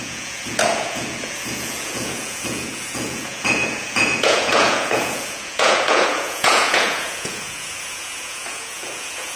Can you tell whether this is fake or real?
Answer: fake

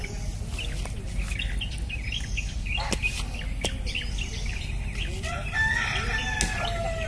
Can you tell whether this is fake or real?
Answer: real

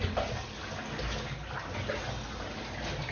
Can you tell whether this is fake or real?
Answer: real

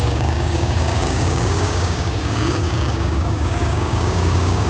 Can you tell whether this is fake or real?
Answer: fake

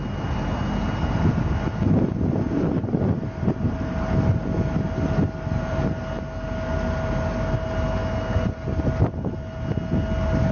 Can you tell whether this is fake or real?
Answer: real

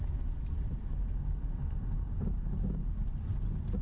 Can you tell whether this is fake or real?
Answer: real